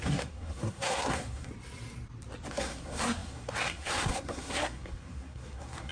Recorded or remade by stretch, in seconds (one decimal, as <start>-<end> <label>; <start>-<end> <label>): 0.0-1.5 remade; 1.5-2.5 recorded; 2.5-5.9 remade

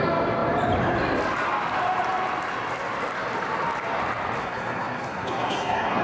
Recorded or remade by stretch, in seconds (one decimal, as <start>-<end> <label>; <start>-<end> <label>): 0.0-4.4 recorded; 4.4-6.0 remade

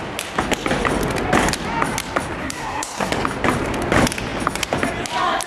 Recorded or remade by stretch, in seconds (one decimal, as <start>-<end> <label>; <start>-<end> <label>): 0.0-2.4 recorded; 2.4-3.1 remade; 3.1-5.5 recorded

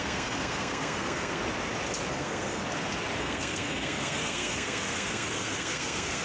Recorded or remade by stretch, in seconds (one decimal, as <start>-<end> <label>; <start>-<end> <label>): 0.0-1.4 remade; 1.4-2.1 recorded; 2.1-2.6 remade; 2.6-3.2 recorded; 3.2-6.2 remade